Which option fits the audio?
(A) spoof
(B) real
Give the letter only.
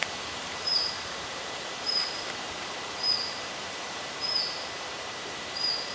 A